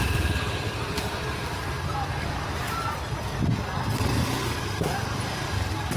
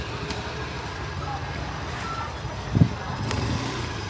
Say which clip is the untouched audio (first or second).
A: second